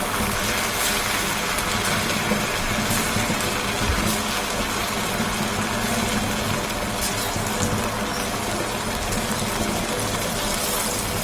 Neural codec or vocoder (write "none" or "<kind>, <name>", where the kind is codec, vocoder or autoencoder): none